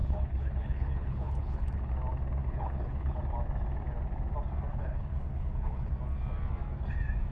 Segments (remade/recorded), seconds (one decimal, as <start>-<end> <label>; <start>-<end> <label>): 0.0-1.9 remade; 1.9-2.4 recorded; 2.4-3.2 remade; 3.2-4.7 recorded; 4.7-5.9 remade; 5.9-7.3 recorded